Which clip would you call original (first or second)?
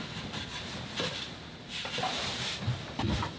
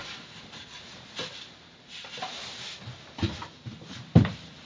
second